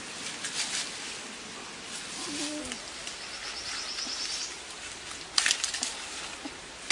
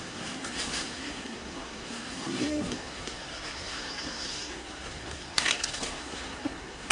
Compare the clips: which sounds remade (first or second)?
second